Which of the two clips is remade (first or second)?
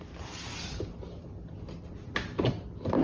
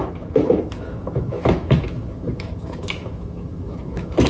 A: second